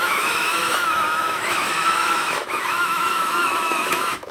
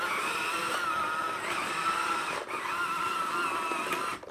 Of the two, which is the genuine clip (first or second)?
second